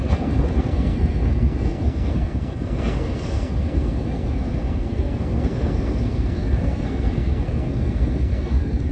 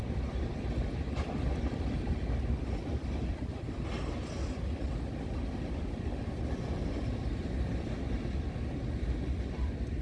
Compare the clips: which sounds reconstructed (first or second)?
first